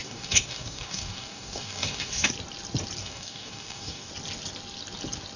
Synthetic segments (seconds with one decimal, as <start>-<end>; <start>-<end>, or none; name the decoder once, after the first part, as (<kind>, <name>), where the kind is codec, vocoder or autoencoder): 0.0-2.3 (codec, DAC); 3.0-4.1